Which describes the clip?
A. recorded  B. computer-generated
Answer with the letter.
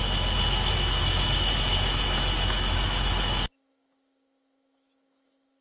B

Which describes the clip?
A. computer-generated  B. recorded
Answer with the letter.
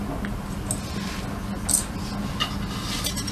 B